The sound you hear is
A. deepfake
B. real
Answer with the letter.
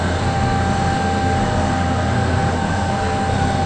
A